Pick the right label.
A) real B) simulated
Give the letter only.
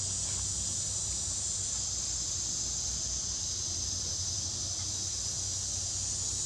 A